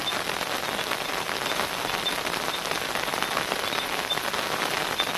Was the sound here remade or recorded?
recorded